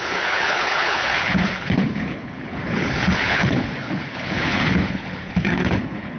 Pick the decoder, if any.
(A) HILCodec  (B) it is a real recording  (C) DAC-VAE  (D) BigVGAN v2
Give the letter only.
A